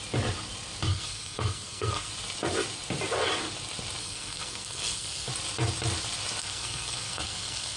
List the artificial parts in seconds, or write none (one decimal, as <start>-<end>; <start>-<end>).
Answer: 0.9-2.1; 4.0-5.3; 6.4-7.8